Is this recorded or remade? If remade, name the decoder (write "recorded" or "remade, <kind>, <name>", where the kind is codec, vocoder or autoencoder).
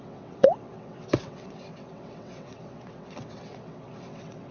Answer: remade, vocoder, WaveNeXt